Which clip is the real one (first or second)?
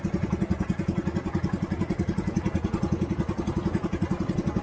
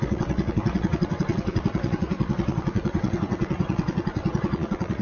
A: first